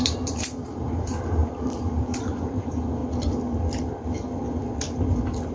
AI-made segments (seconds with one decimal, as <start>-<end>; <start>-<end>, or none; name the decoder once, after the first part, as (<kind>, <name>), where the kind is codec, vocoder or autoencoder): 0.0-3.0 (vocoder, BigVGAN v2)